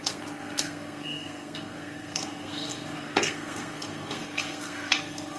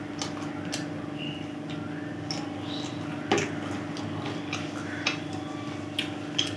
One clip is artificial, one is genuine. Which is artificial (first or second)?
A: first